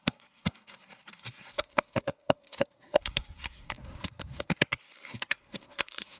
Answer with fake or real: fake